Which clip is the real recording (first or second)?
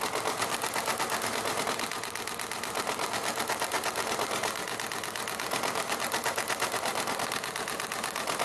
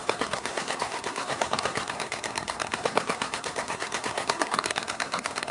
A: first